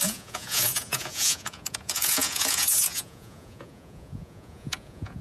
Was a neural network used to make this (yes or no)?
yes